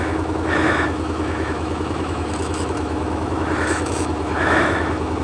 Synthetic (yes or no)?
yes